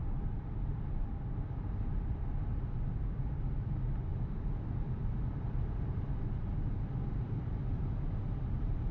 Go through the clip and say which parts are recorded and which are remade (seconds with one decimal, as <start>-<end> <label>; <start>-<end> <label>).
0.0-8.9 remade